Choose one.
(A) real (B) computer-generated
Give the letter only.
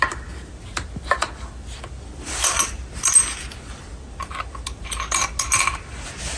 A